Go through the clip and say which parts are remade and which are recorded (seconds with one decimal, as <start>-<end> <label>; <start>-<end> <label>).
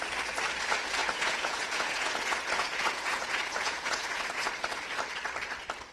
0.0-1.0 recorded; 1.0-4.5 remade; 4.5-5.9 recorded